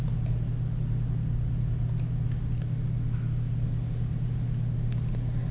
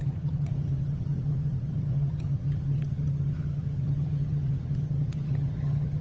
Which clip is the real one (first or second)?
first